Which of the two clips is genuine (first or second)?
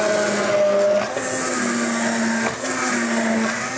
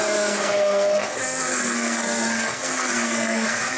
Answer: first